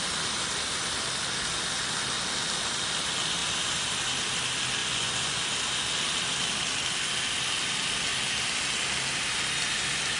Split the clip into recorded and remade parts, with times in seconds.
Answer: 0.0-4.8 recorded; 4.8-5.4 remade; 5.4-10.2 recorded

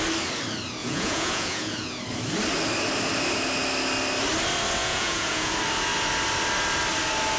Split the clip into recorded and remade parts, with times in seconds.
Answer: 0.0-0.8 recorded; 0.8-2.0 remade; 2.0-4.8 recorded; 4.8-5.5 remade; 5.5-7.4 recorded

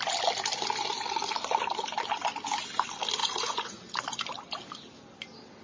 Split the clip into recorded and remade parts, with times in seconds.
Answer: 0.0-3.2 recorded; 3.2-4.0 remade; 4.0-5.6 recorded

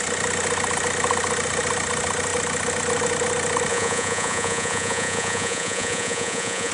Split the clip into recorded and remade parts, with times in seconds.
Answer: 0.0-3.7 recorded; 3.7-6.7 remade